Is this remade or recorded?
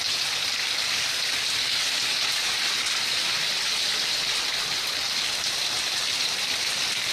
recorded